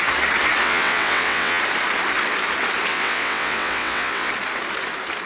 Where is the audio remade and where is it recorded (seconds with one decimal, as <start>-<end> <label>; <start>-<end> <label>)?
0.0-0.6 recorded; 0.6-1.6 remade; 1.6-2.9 recorded; 2.9-4.3 remade; 4.3-5.3 recorded